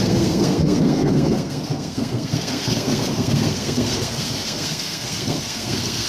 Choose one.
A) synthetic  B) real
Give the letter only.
A